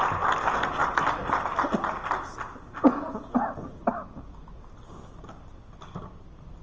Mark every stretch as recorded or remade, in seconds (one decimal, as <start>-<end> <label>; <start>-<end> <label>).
0.0-6.6 recorded